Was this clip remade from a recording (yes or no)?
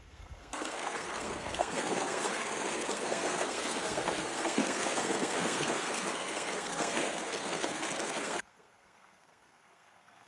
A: yes